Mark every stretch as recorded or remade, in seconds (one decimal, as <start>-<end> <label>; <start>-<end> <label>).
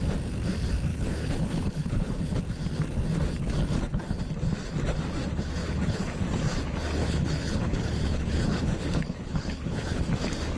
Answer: 0.0-0.9 recorded; 0.9-2.4 remade; 2.4-5.6 recorded; 5.6-6.1 remade; 6.1-7.0 recorded; 7.0-10.0 remade; 10.0-10.6 recorded